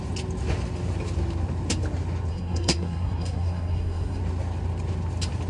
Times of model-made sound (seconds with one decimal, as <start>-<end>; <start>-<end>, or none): 2.3-4.2